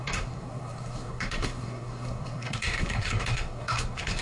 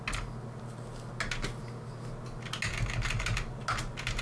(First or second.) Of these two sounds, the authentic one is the second